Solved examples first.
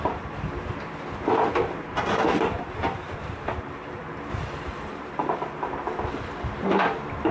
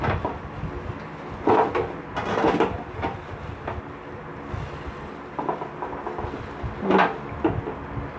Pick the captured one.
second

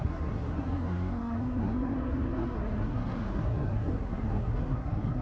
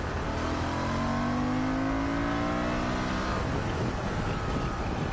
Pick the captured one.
second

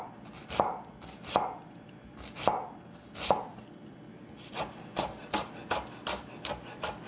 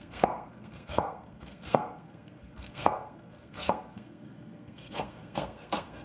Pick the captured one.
first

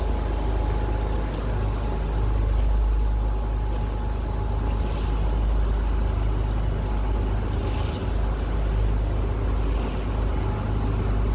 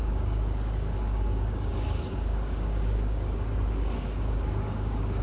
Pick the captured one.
first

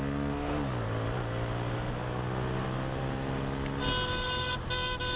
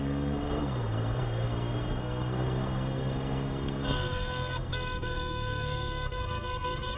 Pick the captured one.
first